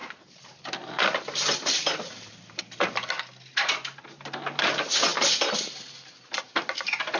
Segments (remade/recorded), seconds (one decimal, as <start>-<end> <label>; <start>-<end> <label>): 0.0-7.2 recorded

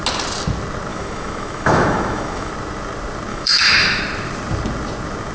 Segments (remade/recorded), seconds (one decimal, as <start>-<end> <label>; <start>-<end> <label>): 0.0-0.9 recorded; 0.9-2.5 remade; 2.5-3.3 recorded; 3.3-4.0 remade; 4.0-5.3 recorded

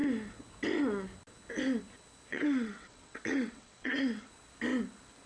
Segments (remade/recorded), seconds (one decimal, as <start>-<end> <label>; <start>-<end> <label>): 0.0-2.3 recorded; 2.3-4.3 remade; 4.3-5.3 recorded